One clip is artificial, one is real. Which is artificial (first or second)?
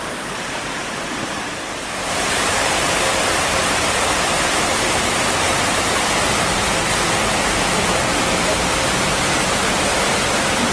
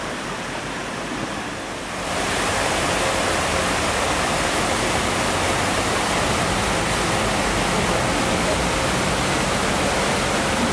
first